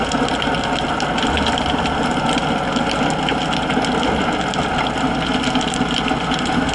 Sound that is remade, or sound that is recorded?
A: recorded